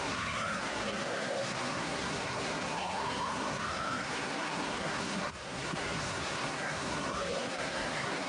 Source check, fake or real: fake